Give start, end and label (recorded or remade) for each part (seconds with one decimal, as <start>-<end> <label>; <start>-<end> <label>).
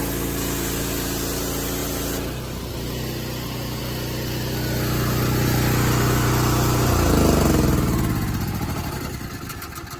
0.0-10.0 recorded